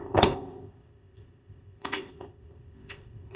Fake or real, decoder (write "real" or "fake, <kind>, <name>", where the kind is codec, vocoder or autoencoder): fake, codec, ZipCodec